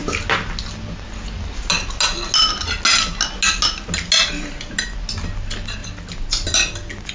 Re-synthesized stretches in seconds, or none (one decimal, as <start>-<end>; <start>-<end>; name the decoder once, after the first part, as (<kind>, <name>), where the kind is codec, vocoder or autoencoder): none